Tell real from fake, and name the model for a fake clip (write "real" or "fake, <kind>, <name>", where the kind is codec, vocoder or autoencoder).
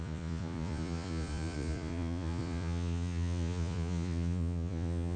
fake, vocoder, Vocos